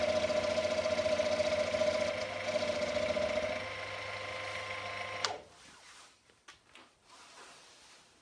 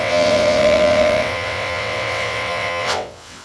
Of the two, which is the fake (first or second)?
second